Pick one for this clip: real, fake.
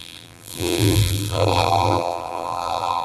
fake